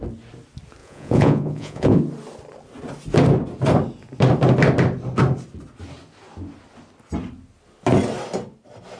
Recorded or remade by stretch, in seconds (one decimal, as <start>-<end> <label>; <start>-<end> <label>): 0.0-0.8 recorded; 0.8-2.0 remade; 2.0-9.0 recorded